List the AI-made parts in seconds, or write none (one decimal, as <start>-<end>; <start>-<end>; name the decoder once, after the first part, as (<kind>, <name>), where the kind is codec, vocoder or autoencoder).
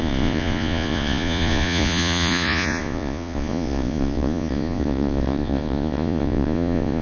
0.0-7.0 (vocoder, Vocos)